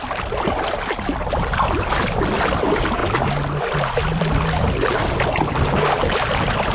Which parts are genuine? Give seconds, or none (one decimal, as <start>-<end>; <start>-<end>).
0.0-6.7